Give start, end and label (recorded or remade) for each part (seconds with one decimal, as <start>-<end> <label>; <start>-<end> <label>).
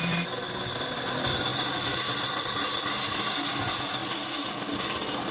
0.0-5.3 recorded